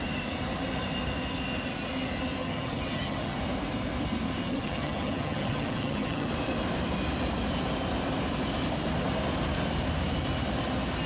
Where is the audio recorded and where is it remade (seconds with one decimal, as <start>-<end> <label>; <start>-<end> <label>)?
0.0-2.4 recorded; 2.4-3.4 remade; 3.4-4.4 recorded; 4.4-6.3 remade; 6.3-11.1 recorded